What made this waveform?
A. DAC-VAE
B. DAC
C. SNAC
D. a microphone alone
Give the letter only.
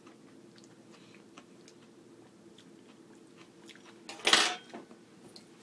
D